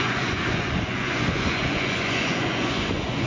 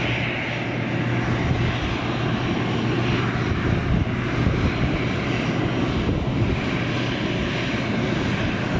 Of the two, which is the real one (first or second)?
second